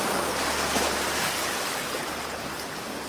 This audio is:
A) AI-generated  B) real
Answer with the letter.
B